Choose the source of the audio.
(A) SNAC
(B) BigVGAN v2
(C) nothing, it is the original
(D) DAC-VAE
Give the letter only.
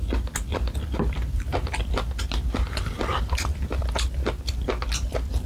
C